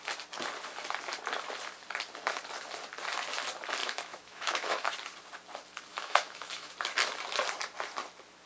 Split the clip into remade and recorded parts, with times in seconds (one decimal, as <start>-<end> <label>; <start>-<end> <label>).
0.0-3.8 recorded; 3.8-4.9 remade; 4.9-5.9 recorded; 5.9-6.7 remade; 6.7-8.5 recorded